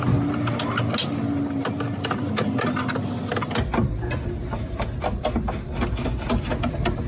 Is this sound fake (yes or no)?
no